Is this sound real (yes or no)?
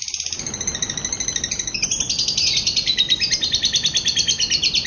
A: yes